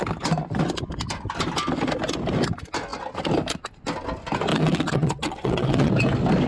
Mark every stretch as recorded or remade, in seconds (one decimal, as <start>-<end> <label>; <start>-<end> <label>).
0.0-4.5 recorded; 4.5-5.9 remade; 5.9-6.5 recorded